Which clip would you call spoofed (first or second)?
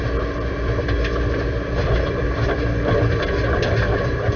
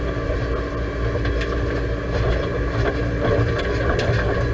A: first